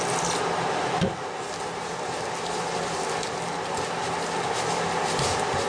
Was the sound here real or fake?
real